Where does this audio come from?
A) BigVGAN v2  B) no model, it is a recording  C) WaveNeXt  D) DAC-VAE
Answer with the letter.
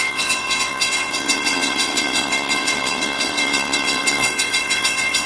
C